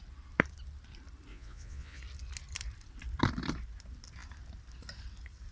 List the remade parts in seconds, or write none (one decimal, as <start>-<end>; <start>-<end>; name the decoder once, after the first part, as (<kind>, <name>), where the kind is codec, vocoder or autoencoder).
1.3-2.0 (vocoder, Vocos)